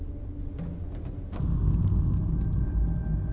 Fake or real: real